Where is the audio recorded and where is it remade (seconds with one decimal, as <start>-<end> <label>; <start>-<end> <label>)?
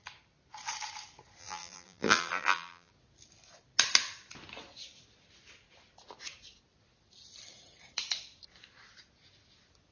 0.0-1.4 recorded; 1.4-2.9 remade; 2.9-9.9 recorded